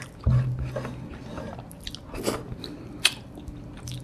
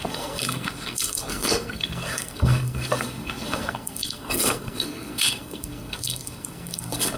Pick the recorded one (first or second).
first